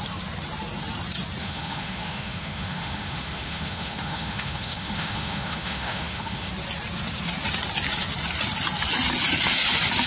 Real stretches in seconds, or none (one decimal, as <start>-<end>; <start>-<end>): 0.0-1.4; 6.5-10.1